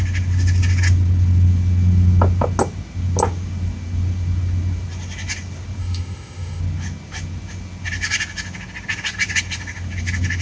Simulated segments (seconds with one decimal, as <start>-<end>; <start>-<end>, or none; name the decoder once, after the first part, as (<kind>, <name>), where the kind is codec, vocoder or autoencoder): 5.8-6.6 (autoencoder, DAC-VAE)